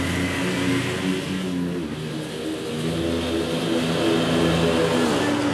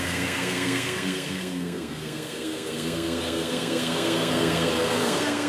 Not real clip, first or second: second